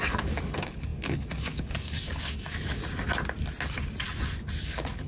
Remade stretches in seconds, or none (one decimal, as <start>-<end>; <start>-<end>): 0.0-2.8; 4.6-5.1